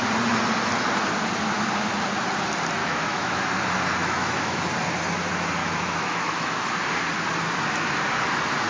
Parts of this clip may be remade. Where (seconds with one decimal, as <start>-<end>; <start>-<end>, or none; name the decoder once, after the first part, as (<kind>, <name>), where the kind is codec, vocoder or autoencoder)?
2.8-3.4 (autoencoder, DAC-VAE); 4.0-4.6; 5.6-6.7